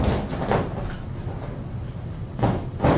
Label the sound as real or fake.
real